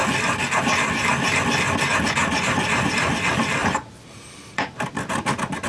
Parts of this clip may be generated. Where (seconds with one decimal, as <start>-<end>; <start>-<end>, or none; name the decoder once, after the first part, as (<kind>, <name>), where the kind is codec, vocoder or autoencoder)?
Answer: 2.2-3.1 (vocoder, BigVGAN v2); 3.6-4.9